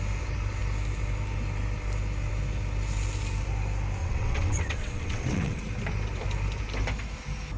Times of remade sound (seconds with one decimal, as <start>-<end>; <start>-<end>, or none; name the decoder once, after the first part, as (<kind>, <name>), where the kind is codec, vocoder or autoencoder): 4.0-5.6 (vocoder, WaveNeXt)